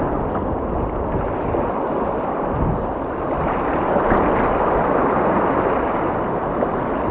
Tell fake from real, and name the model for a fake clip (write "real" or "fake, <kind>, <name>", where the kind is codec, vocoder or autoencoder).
real